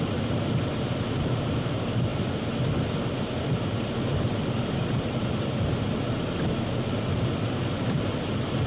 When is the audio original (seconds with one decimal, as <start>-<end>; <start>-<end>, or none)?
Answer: 0.0-8.7